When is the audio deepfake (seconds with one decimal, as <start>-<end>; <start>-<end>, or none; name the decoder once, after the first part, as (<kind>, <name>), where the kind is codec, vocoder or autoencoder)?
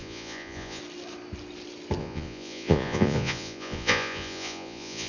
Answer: 0.0-0.8 (vocoder, Vocos); 2.0-5.1